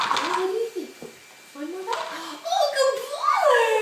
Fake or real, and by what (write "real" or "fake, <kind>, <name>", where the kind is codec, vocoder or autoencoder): real